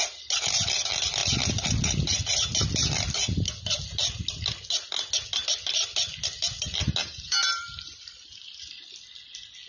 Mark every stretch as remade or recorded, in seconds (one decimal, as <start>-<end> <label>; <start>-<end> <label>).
0.0-7.0 recorded; 7.0-7.8 remade; 7.8-9.7 recorded